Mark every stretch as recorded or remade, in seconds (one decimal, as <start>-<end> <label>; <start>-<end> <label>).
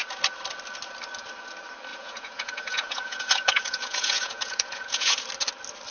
0.0-1.9 recorded; 1.9-5.2 remade; 5.2-5.9 recorded